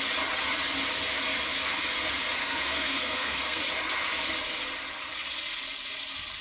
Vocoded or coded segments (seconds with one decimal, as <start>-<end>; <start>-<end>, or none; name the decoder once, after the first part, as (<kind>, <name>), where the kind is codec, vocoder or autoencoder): 2.4-3.6 (codec, SNAC)